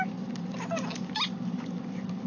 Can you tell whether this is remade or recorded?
recorded